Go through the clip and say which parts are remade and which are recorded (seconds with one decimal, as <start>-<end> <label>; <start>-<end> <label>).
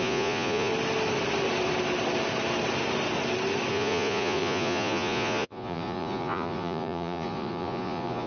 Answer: 0.0-0.7 remade; 0.7-3.7 recorded; 3.7-8.3 remade